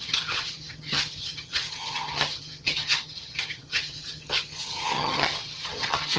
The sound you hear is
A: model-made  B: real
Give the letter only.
A